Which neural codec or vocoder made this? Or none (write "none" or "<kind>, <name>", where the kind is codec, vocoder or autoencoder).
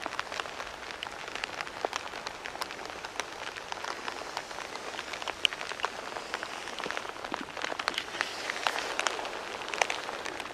none